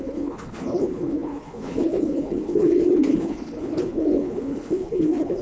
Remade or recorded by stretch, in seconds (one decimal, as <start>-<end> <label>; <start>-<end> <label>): 0.0-5.4 remade